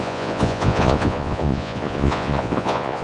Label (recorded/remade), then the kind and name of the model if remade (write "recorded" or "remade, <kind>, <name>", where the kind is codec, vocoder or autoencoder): remade, vocoder, Vocos